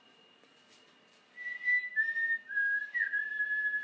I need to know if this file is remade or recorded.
recorded